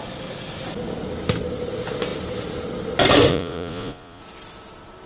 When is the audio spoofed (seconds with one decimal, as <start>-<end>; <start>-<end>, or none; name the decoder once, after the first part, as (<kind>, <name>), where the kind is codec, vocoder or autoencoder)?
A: 3.3-4.2 (vocoder, Vocos)